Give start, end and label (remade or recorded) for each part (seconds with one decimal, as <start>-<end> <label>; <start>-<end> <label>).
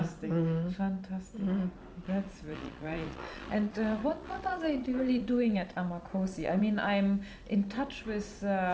0.0-2.0 recorded; 2.0-6.6 remade; 6.6-8.7 recorded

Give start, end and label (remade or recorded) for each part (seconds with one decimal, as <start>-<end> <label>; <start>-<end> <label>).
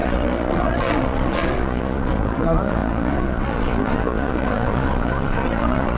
0.0-6.0 remade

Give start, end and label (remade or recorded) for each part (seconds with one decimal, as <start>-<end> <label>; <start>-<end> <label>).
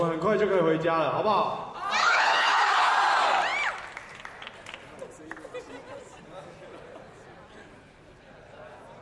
0.0-2.0 recorded; 2.0-2.9 remade; 2.9-9.0 recorded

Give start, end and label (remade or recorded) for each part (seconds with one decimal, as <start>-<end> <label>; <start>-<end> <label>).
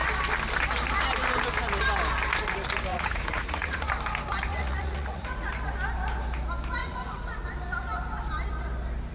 0.0-2.9 recorded; 2.9-3.9 remade; 3.9-4.5 recorded; 4.5-5.5 remade; 5.5-6.8 recorded; 6.8-7.5 remade; 7.5-9.1 recorded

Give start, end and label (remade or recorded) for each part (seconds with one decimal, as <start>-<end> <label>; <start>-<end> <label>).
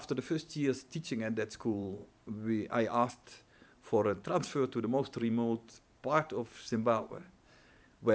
0.0-2.0 remade; 2.0-3.1 recorded; 3.1-8.1 remade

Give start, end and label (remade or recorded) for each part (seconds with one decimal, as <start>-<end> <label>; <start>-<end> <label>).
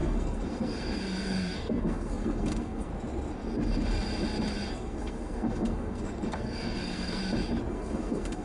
0.0-2.9 remade; 2.9-4.7 recorded; 4.7-7.2 remade; 7.2-7.7 recorded; 7.7-8.4 remade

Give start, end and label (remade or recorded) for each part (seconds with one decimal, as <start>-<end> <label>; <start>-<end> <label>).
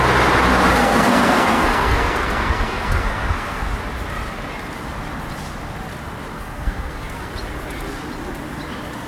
0.0-0.8 recorded; 0.8-3.7 remade; 3.7-6.3 recorded; 6.3-7.3 remade; 7.3-9.1 recorded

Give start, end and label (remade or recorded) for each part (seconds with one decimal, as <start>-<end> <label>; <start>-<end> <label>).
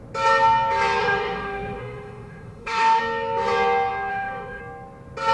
0.0-1.0 recorded; 1.0-3.0 remade; 3.0-4.1 recorded; 4.1-4.6 remade; 4.6-5.3 recorded